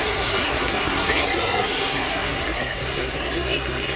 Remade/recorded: remade